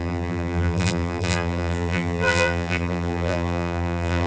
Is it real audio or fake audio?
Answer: fake